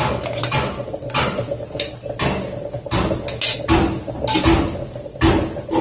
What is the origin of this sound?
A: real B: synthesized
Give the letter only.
A